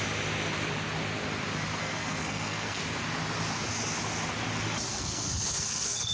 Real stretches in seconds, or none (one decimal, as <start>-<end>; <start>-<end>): 0.0-1.8; 2.8-4.9